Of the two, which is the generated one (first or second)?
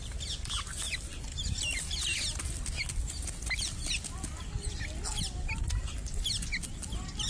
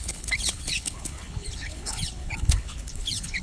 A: second